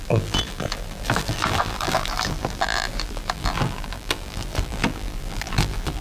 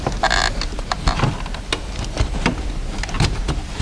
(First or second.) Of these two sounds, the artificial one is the first